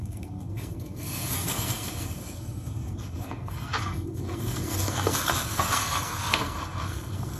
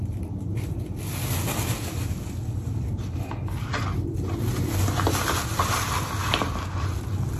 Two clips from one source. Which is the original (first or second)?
second